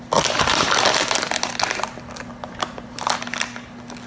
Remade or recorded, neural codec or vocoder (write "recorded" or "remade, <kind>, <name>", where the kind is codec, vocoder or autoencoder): recorded